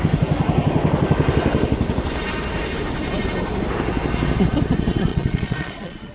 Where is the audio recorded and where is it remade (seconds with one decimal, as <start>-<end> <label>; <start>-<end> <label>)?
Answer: 0.0-5.1 recorded; 5.1-6.1 remade